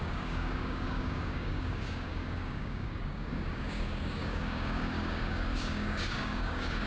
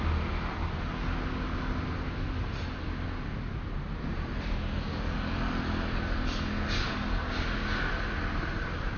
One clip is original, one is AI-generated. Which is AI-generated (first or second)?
first